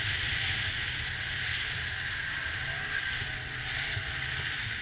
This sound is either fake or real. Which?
fake